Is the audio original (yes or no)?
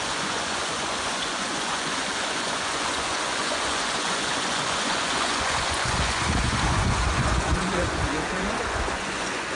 no